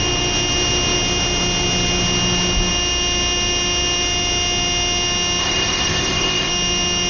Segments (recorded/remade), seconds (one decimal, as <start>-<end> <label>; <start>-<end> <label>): 0.0-5.4 recorded; 5.4-6.5 remade; 6.5-7.1 recorded